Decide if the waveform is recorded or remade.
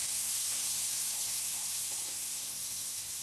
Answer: remade